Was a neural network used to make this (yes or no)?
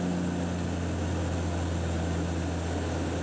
no